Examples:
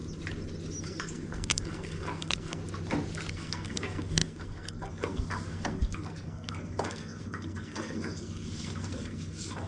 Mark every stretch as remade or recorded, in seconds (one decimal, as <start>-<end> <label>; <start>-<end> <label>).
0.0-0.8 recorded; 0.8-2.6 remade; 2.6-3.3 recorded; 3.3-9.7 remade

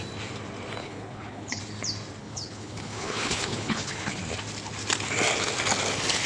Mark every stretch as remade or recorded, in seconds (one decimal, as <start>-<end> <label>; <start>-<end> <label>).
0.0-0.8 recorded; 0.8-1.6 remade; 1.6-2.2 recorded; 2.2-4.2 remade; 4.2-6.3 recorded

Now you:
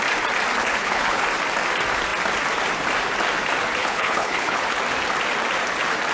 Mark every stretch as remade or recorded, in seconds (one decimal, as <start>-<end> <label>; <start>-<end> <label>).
0.0-0.6 recorded; 0.6-1.2 remade; 1.2-3.8 recorded; 3.8-4.8 remade; 4.8-6.1 recorded

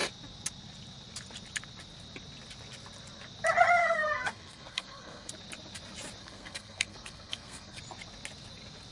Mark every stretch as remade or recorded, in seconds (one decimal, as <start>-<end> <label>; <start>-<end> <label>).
0.0-3.8 recorded; 3.8-5.3 remade; 5.3-6.2 recorded; 6.2-7.8 remade; 7.8-8.9 recorded

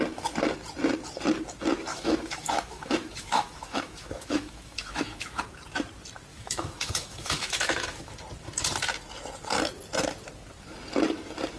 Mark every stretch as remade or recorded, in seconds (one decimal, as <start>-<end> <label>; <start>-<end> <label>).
0.0-1.9 recorded; 1.9-5.4 remade; 5.4-6.3 recorded; 6.3-8.1 remade; 8.1-11.6 recorded